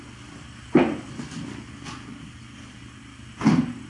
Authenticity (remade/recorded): recorded